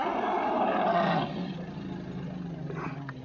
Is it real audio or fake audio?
real